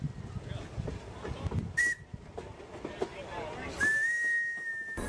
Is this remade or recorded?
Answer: recorded